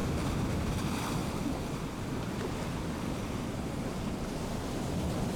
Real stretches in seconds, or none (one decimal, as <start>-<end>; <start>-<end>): 0.0-0.7